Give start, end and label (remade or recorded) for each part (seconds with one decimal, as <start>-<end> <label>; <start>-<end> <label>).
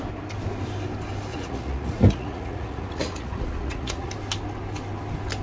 0.0-1.3 recorded; 1.3-4.1 remade; 4.1-5.4 recorded